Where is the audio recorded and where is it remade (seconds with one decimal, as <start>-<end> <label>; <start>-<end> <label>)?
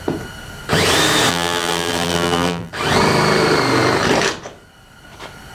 0.0-1.3 recorded; 1.3-2.7 remade; 2.7-5.5 recorded